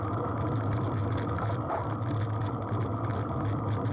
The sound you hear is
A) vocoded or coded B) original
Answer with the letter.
B